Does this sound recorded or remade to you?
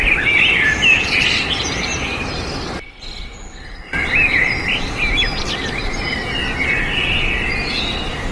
recorded